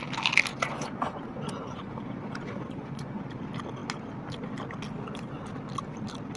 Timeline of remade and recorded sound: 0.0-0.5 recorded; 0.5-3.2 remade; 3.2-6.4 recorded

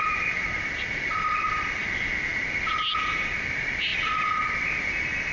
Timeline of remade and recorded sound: 0.0-5.3 recorded

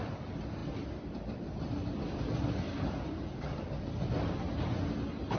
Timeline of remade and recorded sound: 0.0-5.4 recorded